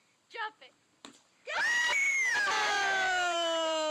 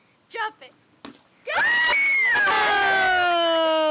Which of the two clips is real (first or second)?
second